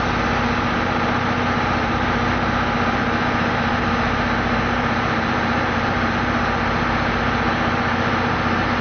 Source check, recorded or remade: recorded